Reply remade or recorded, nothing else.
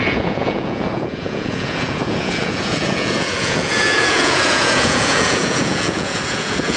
remade